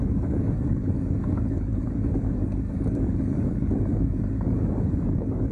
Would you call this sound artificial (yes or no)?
yes